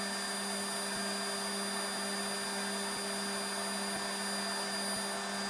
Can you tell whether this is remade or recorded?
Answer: recorded